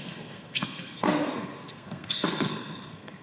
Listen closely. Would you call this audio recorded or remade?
remade